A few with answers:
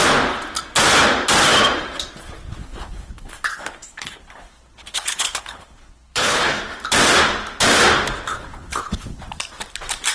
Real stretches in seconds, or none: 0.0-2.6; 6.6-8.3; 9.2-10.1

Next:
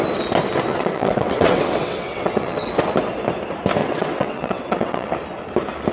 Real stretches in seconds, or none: 0.0-0.7; 2.7-3.8; 5.1-5.9

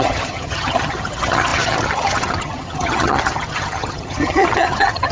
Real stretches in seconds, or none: none

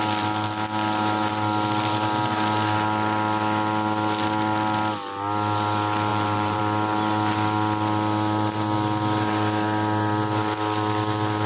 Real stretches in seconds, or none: 0.0-6.1; 6.6-11.5